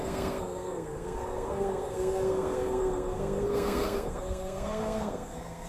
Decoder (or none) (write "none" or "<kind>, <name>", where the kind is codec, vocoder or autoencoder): codec, SNAC